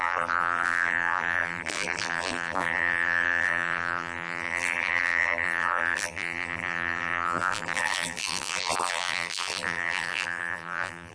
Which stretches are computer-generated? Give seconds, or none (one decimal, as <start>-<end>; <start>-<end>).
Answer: 0.0-11.1